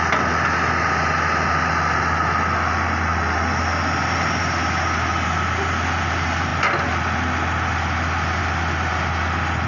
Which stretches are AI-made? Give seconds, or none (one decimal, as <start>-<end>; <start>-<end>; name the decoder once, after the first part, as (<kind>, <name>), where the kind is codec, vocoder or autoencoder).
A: none

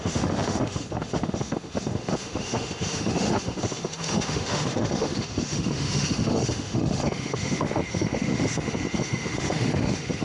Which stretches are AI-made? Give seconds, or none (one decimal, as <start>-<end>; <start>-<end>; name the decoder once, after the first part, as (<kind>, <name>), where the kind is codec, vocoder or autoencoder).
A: 0.0-10.2 (autoencoder, DAC-VAE)

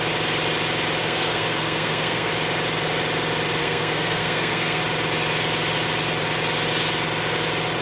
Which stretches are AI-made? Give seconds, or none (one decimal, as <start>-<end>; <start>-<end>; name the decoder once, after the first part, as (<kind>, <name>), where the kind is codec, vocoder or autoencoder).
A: 1.0-2.3 (codec, SNAC); 3.6-4.8

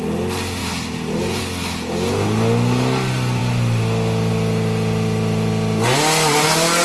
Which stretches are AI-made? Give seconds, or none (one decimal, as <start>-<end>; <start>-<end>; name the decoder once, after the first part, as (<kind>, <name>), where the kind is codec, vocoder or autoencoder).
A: 0.6-1.4 (vocoder, BigVGAN v2)

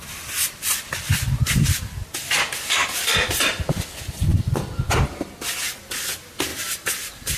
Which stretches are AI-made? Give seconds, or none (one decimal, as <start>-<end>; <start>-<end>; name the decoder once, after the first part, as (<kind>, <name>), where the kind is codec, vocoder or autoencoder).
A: 2.8-3.7 (vocoder, BigVGAN v2)

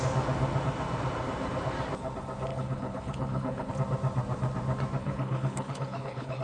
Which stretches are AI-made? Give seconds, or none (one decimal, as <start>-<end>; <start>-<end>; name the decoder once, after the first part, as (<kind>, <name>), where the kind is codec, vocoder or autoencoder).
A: 2.5-3.7 (codec, HILCodec); 5.0-6.4

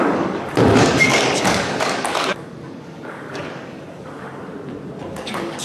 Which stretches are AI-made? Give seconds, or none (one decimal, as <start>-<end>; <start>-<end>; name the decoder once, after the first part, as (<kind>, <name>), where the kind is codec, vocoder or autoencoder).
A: 0.0-4.5 (codec, DAC); 5.1-5.6